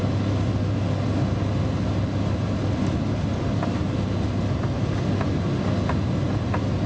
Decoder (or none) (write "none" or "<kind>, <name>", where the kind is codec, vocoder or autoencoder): none